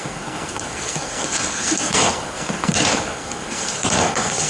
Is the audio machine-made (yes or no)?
yes